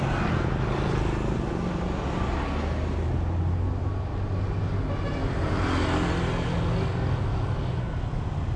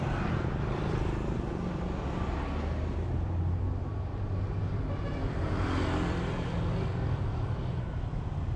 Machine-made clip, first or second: second